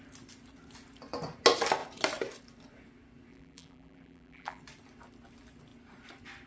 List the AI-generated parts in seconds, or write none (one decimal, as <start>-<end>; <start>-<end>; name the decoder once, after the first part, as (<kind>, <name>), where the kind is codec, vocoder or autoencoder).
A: 3.3-4.6 (vocoder, BigVGAN v2)